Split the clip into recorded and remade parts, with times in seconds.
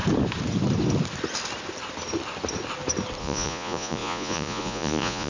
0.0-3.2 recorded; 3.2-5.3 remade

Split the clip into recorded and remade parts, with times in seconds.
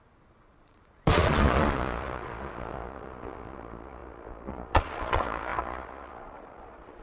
0.0-7.0 remade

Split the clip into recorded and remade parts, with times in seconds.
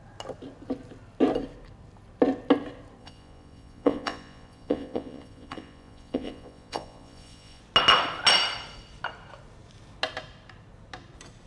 0.0-3.0 recorded; 3.0-7.6 remade; 7.6-11.5 recorded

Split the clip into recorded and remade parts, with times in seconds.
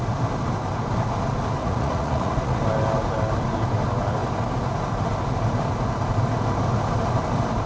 0.0-1.6 recorded; 1.6-2.6 remade; 2.6-7.7 recorded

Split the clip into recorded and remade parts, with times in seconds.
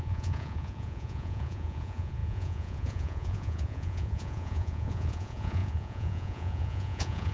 0.0-7.3 remade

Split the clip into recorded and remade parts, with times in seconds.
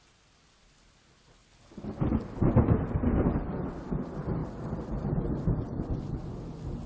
0.0-5.7 recorded; 5.7-6.4 remade; 6.4-6.9 recorded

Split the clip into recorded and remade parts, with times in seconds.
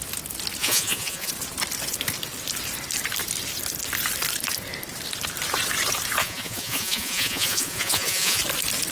0.0-0.6 recorded; 0.6-1.3 remade; 1.3-6.2 recorded; 6.2-8.4 remade; 8.4-8.9 recorded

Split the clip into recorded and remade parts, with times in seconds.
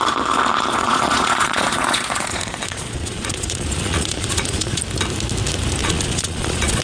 0.0-0.7 recorded; 0.7-4.8 remade; 4.8-5.8 recorded; 5.8-6.8 remade